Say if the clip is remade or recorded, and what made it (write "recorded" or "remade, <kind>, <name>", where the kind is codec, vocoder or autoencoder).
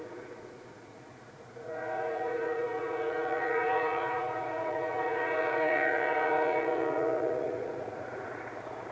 remade, vocoder, Vocos